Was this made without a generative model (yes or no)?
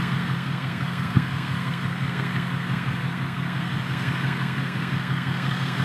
no